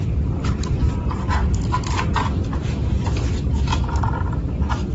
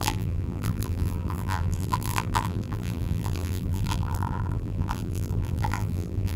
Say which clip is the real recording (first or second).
first